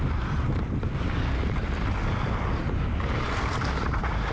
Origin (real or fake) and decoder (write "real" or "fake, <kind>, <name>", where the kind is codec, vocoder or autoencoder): real